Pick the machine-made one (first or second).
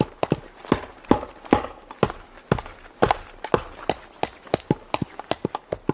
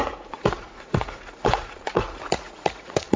second